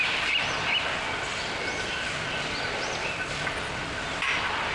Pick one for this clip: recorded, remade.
recorded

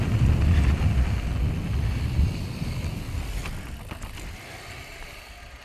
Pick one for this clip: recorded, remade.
recorded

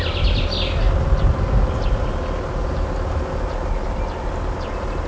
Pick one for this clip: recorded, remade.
recorded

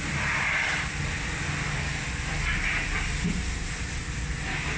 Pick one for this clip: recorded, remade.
recorded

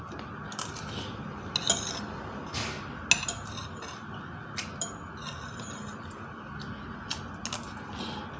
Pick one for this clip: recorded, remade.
recorded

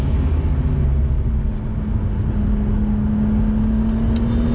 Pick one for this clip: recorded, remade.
recorded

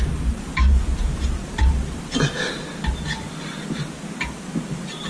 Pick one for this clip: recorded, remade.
recorded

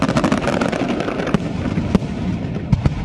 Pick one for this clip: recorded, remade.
recorded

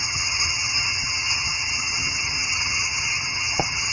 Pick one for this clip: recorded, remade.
remade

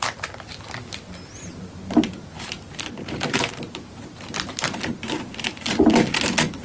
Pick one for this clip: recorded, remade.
recorded